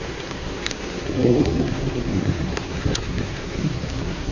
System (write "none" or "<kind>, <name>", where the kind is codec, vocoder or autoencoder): codec, SNAC